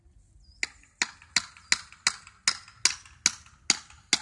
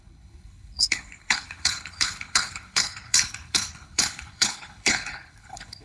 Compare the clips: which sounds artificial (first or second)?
second